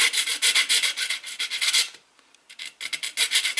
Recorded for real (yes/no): yes